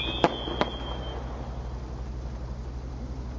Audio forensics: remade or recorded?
recorded